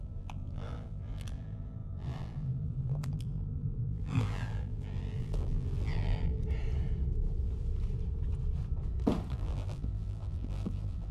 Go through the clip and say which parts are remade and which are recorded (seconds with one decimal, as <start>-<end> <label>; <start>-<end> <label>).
0.0-6.4 remade; 6.4-9.3 recorded; 9.3-11.1 remade